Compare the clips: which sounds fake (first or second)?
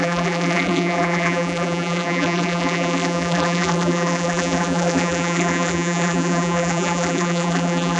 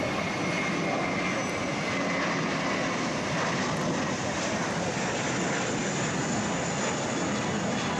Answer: first